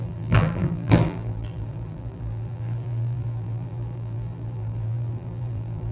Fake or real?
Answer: fake